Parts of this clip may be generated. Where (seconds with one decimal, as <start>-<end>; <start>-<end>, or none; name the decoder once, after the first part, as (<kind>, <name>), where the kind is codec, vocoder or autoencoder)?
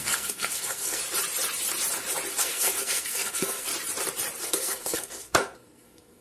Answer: 0.0-1.0 (codec, SNAC); 2.4-3.7; 4.4-6.2